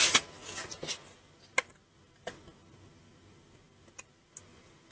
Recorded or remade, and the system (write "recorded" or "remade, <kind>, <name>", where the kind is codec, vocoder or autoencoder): recorded